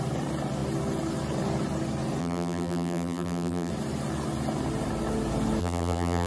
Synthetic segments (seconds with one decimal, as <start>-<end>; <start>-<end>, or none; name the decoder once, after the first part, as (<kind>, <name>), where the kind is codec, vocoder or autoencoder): 2.2-3.7 (vocoder, BigVGAN v2); 5.6-6.3